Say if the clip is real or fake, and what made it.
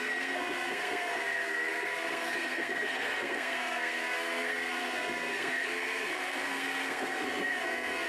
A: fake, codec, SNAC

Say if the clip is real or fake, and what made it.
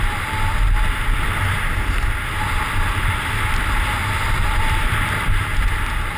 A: real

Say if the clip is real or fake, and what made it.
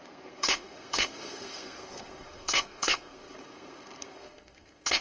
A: fake, codec, SNAC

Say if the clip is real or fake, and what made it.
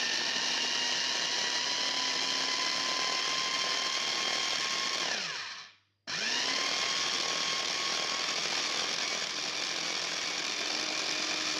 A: real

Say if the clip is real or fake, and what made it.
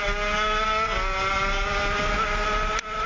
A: real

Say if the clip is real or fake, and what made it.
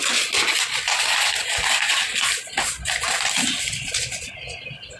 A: real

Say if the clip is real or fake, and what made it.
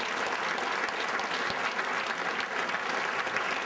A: real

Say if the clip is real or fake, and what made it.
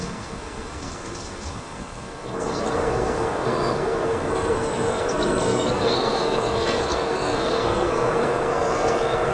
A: fake, codec, SNAC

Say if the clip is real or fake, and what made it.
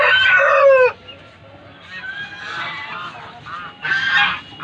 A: real